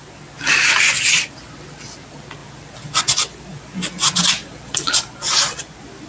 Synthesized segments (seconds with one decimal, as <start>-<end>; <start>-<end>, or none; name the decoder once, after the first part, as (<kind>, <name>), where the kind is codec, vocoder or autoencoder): none